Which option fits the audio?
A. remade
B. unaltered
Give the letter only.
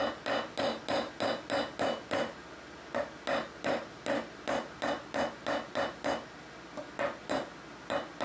B